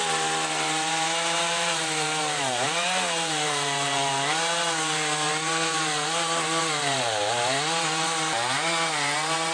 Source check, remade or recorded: remade